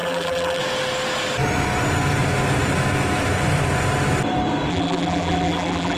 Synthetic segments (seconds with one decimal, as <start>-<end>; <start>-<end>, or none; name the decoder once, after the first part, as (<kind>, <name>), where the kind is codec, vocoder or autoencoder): 0.0-0.6 (vocoder, BigVGAN v2); 4.7-6.0